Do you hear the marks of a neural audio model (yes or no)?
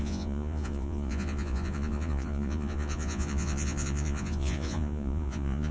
yes